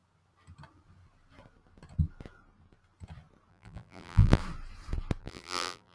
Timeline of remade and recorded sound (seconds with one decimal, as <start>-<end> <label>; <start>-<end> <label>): 0.0-3.5 recorded; 3.5-4.4 remade; 4.4-5.2 recorded; 5.2-5.9 remade